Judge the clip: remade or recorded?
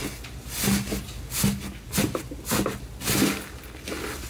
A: recorded